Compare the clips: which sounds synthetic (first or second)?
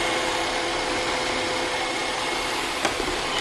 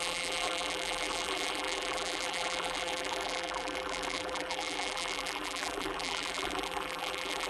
second